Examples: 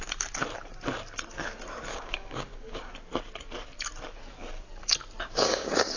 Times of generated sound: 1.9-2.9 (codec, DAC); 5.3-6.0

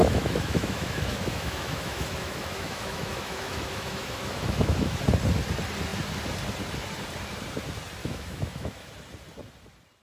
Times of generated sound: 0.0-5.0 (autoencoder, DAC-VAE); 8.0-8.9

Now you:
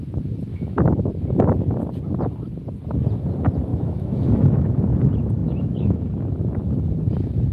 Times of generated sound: 0.5-1.1 (autoencoder, DAC-VAE); 3.7-4.8; 5.4-6.4

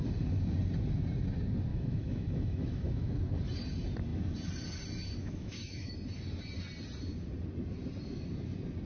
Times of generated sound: 1.7-3.1 (autoencoder, DAC-VAE); 5.2-5.9

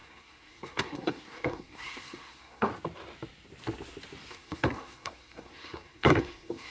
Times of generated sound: 0.0-2.7 (codec, SNAC); 4.3-6.7